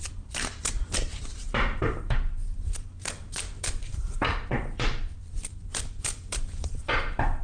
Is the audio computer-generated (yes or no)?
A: yes